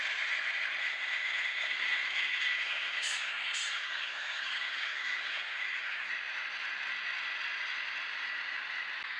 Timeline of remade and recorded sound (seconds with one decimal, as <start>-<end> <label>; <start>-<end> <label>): 0.0-0.8 recorded; 0.8-6.1 remade; 6.1-9.2 recorded